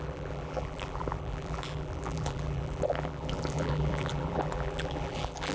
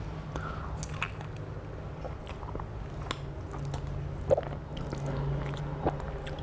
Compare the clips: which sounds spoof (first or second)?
first